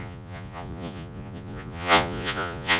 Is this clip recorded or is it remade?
remade